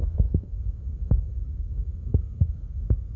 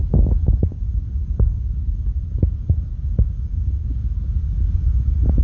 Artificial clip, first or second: first